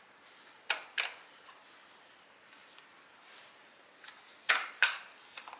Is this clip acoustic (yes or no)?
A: yes